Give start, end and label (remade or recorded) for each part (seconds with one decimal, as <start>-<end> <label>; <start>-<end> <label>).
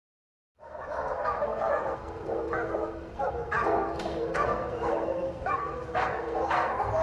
0.0-7.0 remade